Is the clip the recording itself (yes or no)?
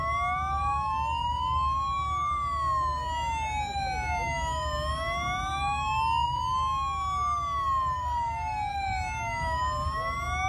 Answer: yes